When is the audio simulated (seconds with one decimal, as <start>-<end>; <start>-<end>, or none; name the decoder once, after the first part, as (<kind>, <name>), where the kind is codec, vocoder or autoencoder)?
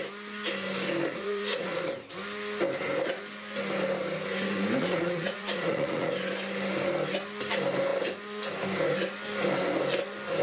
1.1-1.9 (vocoder, Vocos); 4.8-6.1